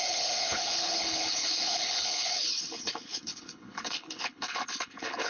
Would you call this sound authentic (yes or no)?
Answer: no